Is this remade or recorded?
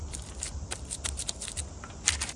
recorded